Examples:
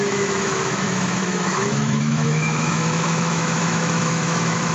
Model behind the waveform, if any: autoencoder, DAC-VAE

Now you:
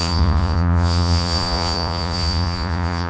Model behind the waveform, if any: vocoder, Vocos